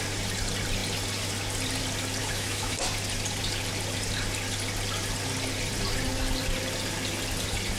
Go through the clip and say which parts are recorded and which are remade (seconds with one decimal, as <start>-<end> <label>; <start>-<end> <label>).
0.0-2.2 recorded; 2.2-2.8 remade; 2.8-7.8 recorded